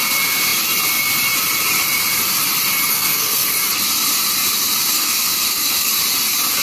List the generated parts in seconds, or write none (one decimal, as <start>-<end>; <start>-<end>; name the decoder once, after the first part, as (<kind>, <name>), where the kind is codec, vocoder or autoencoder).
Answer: 2.9-3.5 (codec, SNAC); 4.9-5.9